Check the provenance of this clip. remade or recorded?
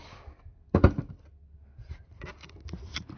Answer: recorded